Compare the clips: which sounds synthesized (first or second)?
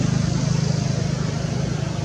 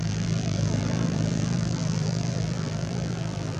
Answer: second